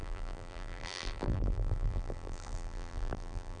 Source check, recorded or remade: remade